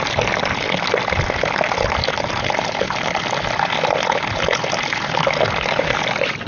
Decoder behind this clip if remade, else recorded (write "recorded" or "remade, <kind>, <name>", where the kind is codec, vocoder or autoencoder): recorded